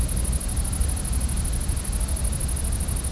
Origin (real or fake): real